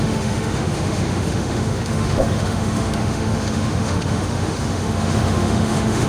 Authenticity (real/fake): fake